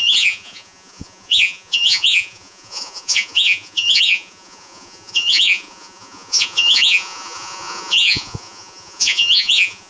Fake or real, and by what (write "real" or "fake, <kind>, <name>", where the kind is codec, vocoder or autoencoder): fake, vocoder, Vocos